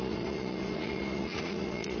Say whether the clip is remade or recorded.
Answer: remade